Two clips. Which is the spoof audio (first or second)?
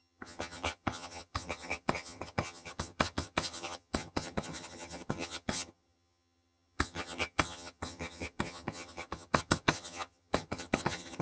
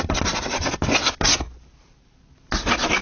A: first